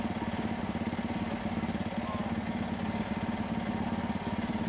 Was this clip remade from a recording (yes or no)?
no